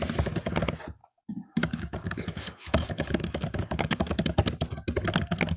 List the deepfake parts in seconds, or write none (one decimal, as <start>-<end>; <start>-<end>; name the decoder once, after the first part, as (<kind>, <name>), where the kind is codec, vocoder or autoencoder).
1.0-4.4 (codec, DAC)